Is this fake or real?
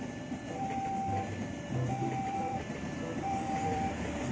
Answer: fake